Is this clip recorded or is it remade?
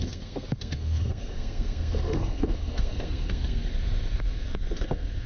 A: remade